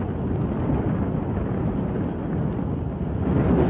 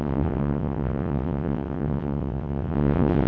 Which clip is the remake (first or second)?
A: second